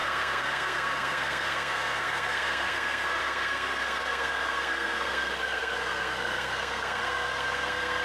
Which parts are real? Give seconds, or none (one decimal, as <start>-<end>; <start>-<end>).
none